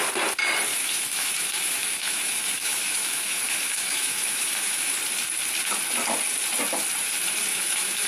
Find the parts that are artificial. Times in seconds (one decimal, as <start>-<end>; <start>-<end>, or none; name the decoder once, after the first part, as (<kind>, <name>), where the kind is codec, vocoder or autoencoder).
0.7-4.9 (autoencoder, DAC-VAE); 7.5-8.1